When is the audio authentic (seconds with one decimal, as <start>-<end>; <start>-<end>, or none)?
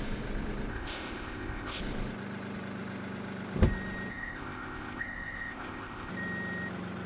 0.0-0.7; 1.8-4.1; 6.1-7.1